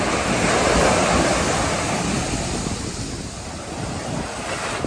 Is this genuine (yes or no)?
yes